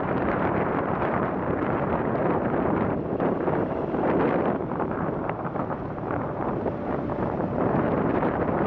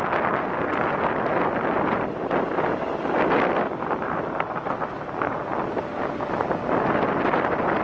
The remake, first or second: first